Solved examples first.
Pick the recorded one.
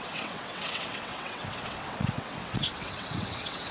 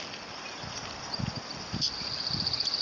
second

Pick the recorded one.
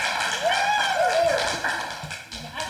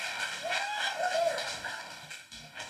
first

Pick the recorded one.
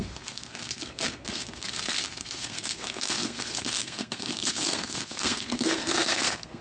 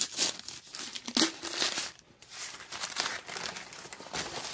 second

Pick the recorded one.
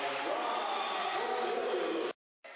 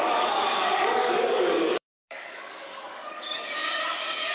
first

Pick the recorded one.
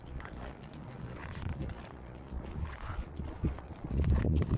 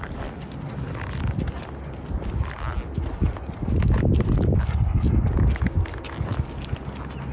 second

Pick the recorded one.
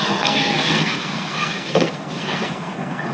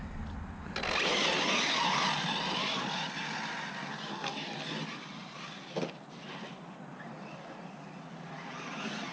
second